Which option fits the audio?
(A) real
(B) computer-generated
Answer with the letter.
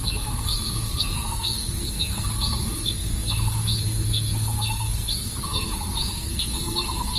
B